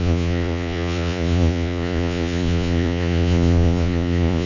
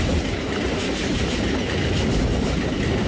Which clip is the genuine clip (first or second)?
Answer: second